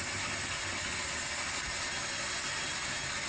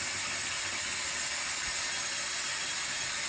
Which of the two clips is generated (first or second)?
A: second